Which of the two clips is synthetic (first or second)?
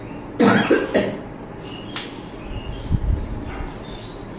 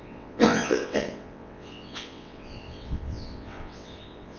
second